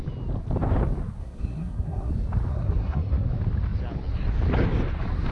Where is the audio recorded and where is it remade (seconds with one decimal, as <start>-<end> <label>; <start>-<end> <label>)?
0.0-1.2 recorded; 1.2-2.1 remade; 2.1-2.5 recorded; 2.5-3.3 remade; 3.3-5.3 recorded